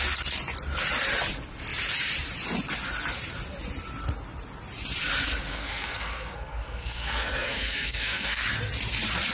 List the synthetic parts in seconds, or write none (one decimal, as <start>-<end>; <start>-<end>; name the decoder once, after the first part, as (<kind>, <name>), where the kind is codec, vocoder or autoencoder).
5.5-8.4 (codec, SNAC)